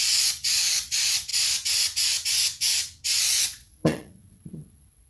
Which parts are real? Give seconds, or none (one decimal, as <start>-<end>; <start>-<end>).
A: 1.3-3.2